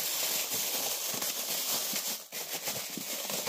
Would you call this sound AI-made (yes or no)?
no